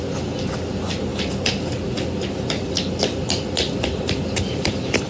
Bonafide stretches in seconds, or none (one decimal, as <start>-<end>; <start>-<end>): 0.0-5.1